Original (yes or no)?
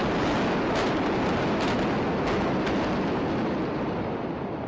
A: yes